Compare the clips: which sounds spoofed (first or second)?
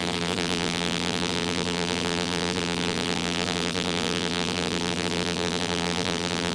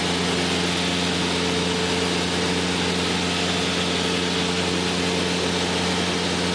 first